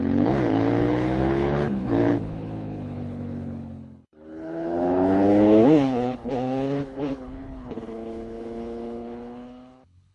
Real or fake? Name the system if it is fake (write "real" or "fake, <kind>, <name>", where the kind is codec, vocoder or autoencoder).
fake, codec, HILCodec